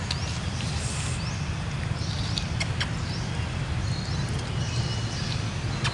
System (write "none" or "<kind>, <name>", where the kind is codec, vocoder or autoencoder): none